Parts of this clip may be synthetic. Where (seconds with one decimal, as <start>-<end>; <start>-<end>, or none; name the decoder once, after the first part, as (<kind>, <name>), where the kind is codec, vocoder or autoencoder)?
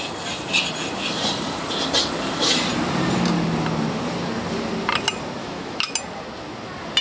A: 5.4-5.9 (autoencoder, DAC-VAE)